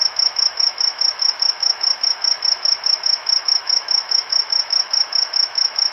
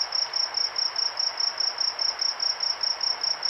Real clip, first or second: second